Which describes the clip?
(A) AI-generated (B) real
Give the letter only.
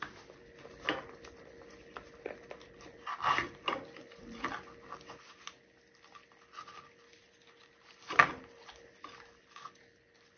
B